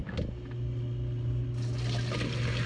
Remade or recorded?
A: recorded